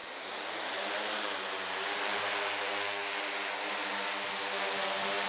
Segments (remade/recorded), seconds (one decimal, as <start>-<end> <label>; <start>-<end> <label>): 0.0-5.3 recorded